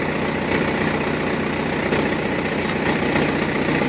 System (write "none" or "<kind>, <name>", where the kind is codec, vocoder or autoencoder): none